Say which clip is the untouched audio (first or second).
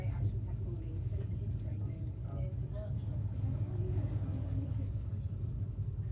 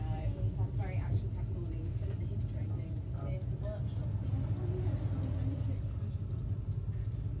second